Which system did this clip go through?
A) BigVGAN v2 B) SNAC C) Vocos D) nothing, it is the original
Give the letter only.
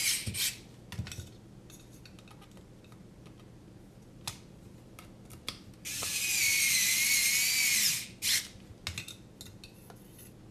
D